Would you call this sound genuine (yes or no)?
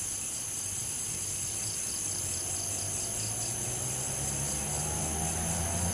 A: yes